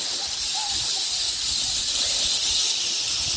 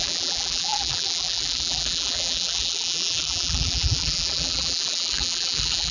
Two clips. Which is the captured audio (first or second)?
first